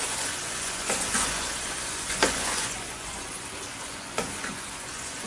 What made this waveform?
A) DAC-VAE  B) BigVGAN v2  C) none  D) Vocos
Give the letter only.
D